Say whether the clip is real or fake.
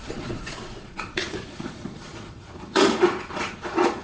fake